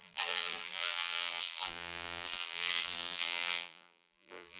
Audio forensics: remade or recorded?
remade